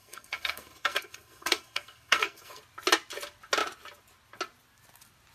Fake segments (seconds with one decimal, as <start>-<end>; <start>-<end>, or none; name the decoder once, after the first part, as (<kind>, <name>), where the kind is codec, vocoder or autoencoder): 0.0-2.6 (codec, SNAC)